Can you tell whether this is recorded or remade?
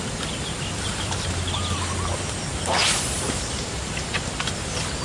recorded